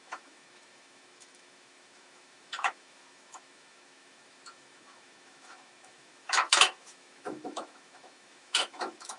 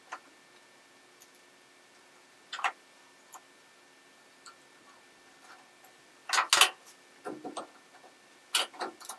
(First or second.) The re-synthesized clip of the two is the first